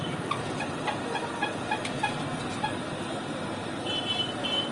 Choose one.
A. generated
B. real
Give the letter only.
B